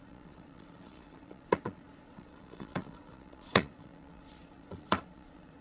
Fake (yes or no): yes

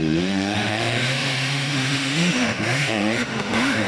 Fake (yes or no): yes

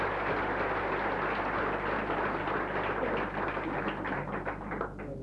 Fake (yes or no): no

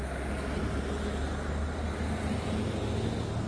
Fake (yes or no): no